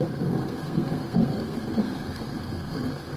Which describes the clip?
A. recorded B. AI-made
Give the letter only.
B